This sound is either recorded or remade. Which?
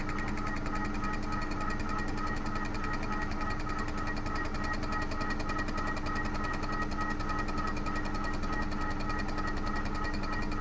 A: recorded